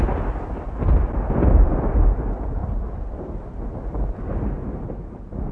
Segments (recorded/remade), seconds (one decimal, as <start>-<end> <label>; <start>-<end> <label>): 0.0-1.7 recorded; 1.7-2.2 remade; 2.2-2.6 recorded; 2.6-4.2 remade; 4.2-4.7 recorded; 4.7-5.5 remade